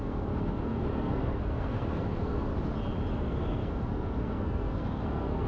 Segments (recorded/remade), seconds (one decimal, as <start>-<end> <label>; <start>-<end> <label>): 0.0-2.5 remade; 2.5-3.1 recorded; 3.1-5.5 remade